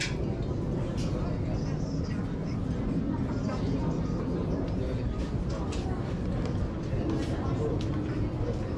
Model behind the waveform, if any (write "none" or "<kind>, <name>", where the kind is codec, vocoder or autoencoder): none